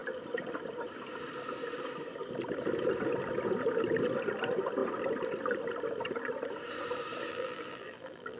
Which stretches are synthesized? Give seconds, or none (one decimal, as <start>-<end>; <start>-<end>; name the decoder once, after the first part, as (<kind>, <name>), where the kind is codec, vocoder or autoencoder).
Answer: 7.3-8.4 (vocoder, BigVGAN v2)